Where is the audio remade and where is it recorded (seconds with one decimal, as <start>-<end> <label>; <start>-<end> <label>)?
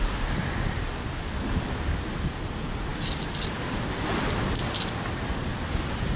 0.0-6.2 recorded